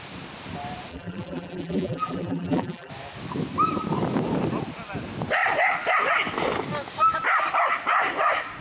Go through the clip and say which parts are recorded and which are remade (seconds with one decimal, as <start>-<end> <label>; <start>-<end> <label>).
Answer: 0.0-0.9 recorded; 0.9-2.9 remade; 2.9-8.6 recorded